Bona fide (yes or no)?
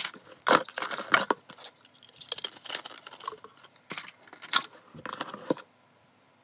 yes